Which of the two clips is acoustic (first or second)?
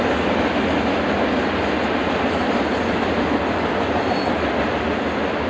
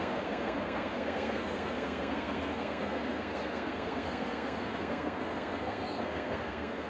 first